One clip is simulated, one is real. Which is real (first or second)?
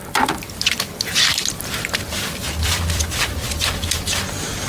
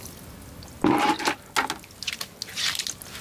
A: second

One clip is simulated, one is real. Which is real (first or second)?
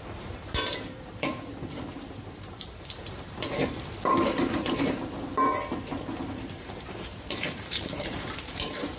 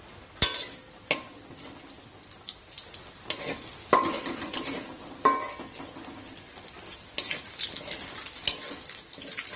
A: second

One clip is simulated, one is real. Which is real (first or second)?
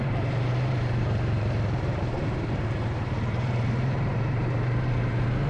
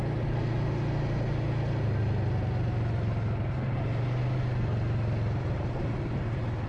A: second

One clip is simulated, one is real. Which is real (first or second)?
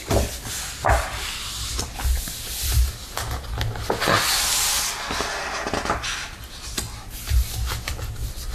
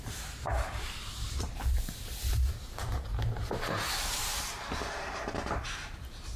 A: first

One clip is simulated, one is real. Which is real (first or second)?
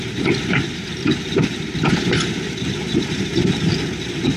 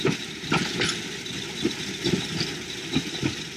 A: second